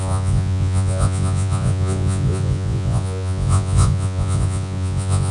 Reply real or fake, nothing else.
fake